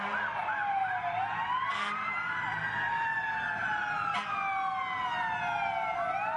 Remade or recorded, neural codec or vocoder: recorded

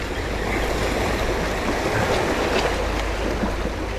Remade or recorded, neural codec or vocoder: recorded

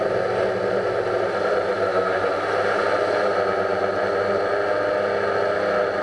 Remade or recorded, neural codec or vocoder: recorded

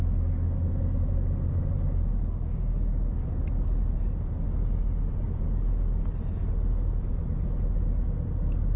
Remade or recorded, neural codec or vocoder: recorded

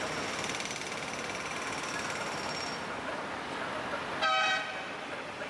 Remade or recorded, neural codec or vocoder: recorded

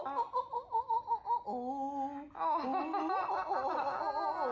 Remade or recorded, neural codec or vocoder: recorded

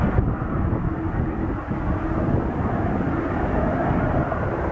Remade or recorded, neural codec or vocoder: recorded